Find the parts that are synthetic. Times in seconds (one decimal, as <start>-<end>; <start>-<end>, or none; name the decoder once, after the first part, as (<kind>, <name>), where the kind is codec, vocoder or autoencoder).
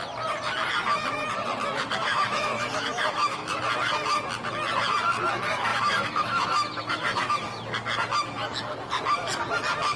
2.0-3.6 (autoencoder, DAC-VAE); 5.7-7.3